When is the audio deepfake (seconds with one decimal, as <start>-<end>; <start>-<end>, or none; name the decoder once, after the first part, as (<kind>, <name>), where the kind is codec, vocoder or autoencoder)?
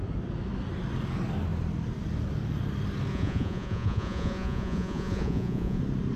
3.1-5.8 (vocoder, Vocos)